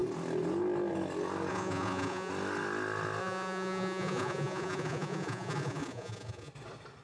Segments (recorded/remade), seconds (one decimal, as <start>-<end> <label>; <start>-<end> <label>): 0.0-1.5 recorded; 1.5-2.3 remade; 2.3-3.2 recorded; 3.2-6.5 remade; 6.5-7.0 recorded